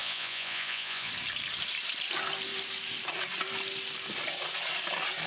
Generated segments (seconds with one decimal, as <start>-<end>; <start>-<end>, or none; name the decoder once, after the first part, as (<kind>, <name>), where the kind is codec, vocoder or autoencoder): 0.0-1.1 (vocoder, Vocos)

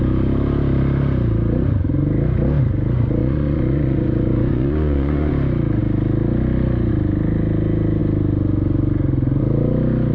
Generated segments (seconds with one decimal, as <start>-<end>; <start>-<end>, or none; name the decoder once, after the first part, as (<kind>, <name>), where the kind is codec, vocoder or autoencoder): 3.2-5.3 (vocoder, Vocos)

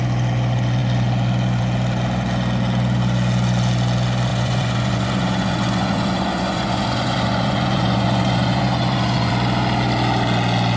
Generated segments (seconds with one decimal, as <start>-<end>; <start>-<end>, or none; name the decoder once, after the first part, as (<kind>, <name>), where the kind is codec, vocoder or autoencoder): 4.3-9.3 (vocoder, Vocos)

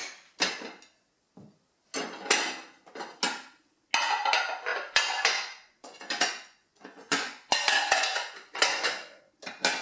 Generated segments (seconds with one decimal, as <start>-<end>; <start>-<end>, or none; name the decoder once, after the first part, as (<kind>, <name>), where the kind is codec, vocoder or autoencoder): 4.7-9.2 (vocoder, Vocos)

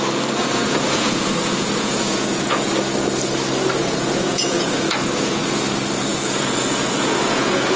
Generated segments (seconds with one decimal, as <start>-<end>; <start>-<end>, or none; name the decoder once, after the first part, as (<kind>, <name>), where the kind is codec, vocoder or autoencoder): 0.4-2.7 (vocoder, Vocos); 3.8-5.6; 6.1-7.8

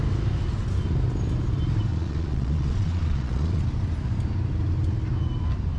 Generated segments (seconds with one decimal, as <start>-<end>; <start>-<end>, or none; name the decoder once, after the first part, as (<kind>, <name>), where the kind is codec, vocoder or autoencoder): 1.9-3.6 (vocoder, Vocos)

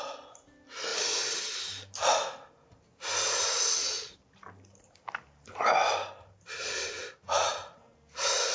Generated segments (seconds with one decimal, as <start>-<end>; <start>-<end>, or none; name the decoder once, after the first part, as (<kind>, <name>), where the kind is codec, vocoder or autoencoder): 7.0-7.7 (vocoder, Vocos)

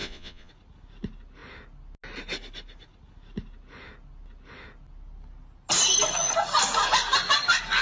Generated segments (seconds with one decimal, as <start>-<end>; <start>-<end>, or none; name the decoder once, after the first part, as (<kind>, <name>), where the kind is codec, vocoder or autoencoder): 0.0-0.5 (vocoder, Vocos)